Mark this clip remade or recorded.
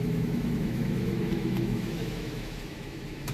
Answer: remade